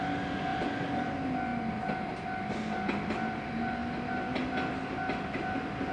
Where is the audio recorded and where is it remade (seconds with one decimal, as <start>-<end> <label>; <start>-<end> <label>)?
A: 0.0-0.5 recorded; 0.5-1.1 remade; 1.1-5.9 recorded